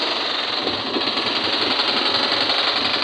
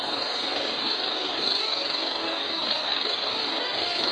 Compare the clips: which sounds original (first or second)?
first